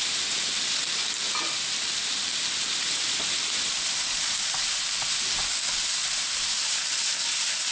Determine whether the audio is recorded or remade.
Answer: remade